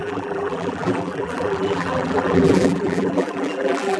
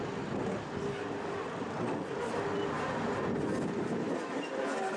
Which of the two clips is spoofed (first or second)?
first